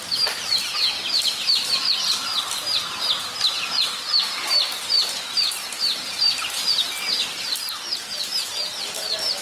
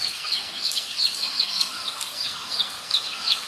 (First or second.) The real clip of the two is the first